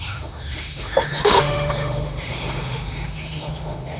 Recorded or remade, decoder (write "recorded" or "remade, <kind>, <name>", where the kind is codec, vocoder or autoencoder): remade, autoencoder, DAC-VAE